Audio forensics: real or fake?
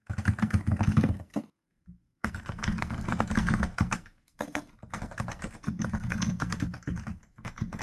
fake